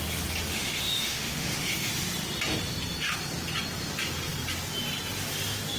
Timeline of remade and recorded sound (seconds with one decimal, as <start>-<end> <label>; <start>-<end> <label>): 0.0-0.5 recorded; 0.5-1.9 remade; 1.9-5.8 recorded